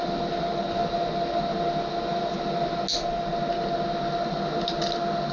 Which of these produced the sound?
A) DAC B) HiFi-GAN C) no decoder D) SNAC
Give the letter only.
C